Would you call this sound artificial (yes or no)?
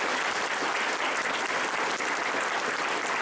no